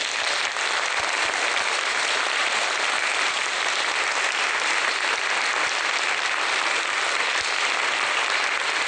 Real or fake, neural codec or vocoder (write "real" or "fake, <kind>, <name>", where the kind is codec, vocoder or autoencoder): real